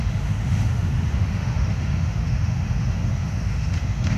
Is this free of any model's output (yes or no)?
no